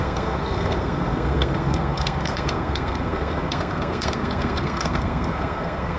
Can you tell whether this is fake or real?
fake